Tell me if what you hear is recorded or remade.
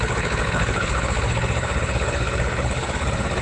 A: remade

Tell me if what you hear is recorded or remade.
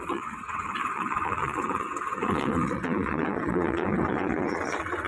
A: remade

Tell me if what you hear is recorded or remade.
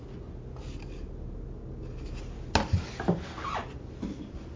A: recorded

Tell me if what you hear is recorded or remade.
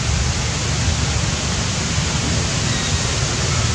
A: recorded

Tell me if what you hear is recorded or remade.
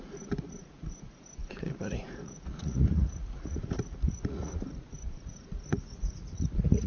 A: remade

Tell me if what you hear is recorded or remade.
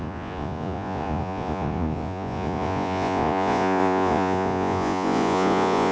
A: remade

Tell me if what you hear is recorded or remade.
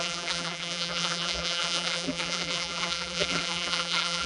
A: remade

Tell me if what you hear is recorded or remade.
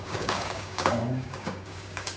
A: remade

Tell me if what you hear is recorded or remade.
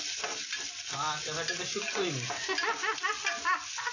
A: recorded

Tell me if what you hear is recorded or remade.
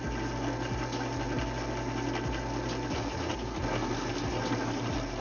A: recorded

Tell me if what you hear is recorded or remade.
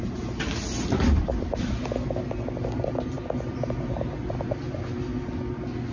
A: recorded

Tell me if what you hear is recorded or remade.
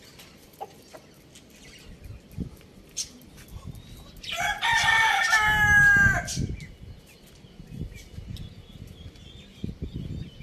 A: recorded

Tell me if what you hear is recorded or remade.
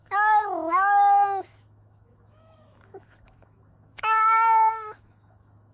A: remade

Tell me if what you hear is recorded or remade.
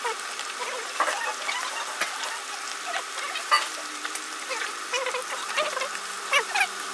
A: recorded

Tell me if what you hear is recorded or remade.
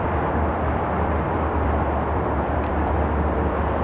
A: remade